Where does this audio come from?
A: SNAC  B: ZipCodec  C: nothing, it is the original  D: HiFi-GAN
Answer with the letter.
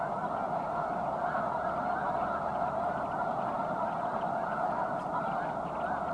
C